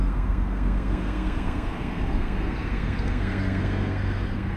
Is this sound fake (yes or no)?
yes